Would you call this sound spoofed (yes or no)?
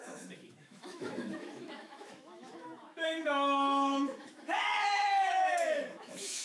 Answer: yes